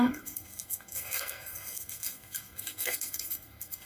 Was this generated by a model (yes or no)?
yes